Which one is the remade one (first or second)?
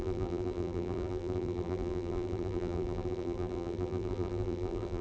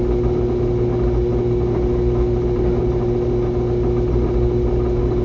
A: first